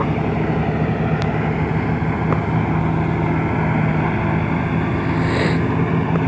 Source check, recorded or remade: recorded